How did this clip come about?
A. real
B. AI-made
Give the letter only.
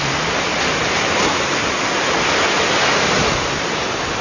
A